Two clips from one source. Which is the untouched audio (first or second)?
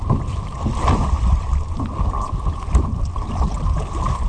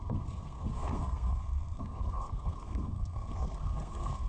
first